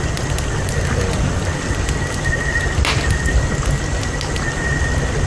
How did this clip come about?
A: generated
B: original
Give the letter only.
B